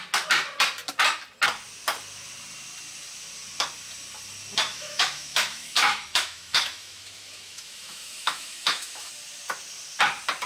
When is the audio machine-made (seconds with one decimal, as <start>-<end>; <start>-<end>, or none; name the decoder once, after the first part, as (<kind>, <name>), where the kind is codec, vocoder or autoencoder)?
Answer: 4.7-9.1 (autoencoder, DAC-VAE)